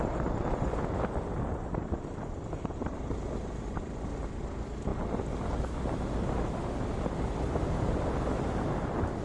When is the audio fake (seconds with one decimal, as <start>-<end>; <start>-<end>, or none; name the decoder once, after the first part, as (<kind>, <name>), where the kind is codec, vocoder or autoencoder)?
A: none